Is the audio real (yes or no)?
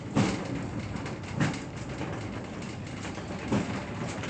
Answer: yes